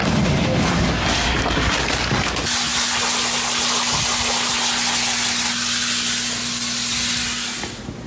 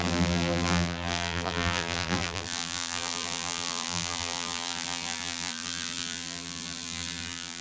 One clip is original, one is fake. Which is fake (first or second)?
second